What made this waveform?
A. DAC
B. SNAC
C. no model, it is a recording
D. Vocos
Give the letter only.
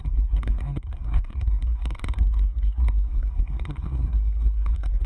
B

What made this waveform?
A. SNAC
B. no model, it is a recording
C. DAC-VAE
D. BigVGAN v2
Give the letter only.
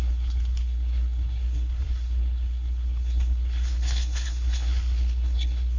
A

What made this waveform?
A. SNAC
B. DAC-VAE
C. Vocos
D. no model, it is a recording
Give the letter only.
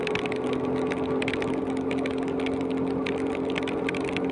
D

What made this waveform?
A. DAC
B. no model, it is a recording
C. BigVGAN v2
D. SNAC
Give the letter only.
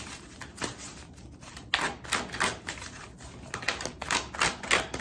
B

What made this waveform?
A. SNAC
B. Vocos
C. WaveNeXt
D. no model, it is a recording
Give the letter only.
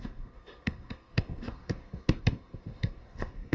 A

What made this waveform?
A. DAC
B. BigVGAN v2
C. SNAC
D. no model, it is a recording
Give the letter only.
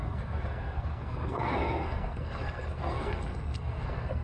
C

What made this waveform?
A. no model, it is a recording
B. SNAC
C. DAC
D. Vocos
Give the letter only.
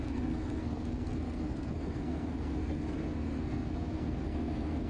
B